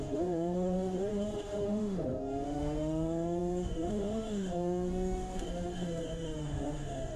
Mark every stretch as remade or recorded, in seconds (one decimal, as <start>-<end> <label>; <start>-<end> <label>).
0.0-7.2 remade